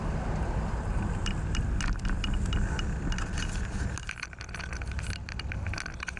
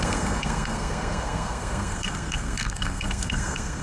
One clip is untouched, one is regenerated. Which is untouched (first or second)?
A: first